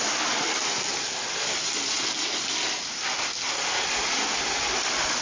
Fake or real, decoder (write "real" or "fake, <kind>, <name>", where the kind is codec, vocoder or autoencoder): real